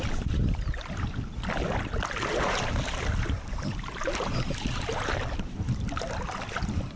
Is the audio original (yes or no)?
yes